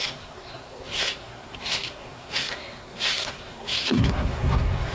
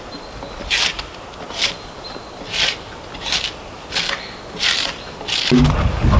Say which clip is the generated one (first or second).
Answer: first